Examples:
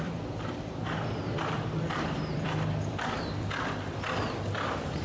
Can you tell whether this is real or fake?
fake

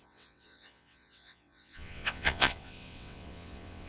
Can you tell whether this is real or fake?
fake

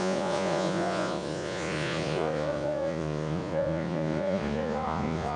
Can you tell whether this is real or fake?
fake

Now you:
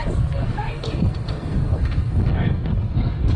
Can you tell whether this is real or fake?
fake